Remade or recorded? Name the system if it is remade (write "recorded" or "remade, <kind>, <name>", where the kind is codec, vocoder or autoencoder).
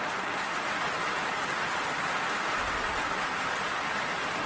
recorded